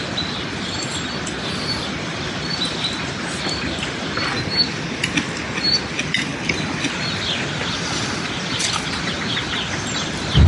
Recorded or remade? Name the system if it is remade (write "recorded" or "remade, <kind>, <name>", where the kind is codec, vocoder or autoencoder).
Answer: recorded